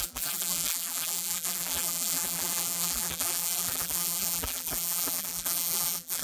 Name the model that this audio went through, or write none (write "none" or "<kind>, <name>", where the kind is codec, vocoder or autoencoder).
vocoder, BigVGAN v2